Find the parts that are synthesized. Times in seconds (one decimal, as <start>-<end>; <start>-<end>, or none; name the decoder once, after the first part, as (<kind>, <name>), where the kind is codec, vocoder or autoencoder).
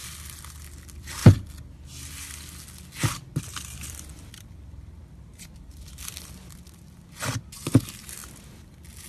0.5-1.2 (vocoder, BigVGAN v2); 3.4-8.2